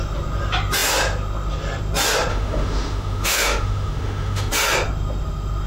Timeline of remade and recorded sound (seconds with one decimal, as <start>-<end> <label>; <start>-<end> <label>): 0.0-2.3 recorded; 2.3-4.5 remade; 4.5-5.7 recorded